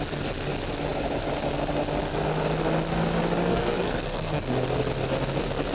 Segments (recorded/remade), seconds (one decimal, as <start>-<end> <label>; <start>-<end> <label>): 0.0-3.5 recorded; 3.5-4.5 remade; 4.5-5.7 recorded